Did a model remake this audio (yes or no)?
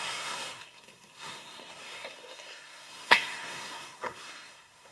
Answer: yes